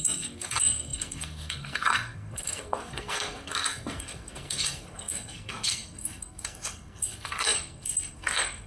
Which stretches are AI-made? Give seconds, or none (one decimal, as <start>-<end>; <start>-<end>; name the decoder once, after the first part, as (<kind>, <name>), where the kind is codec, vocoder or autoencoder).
0.0-8.7 (codec, SNAC)